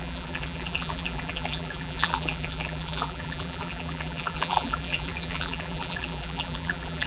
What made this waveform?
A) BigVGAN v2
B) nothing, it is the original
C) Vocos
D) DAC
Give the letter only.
A